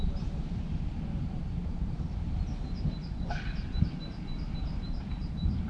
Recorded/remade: remade